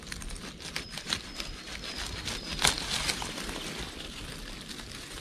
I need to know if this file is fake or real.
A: real